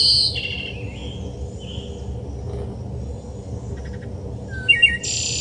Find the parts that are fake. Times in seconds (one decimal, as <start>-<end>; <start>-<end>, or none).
none